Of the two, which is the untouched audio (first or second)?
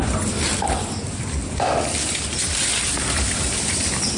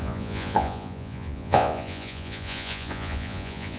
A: first